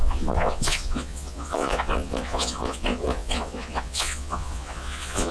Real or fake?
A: fake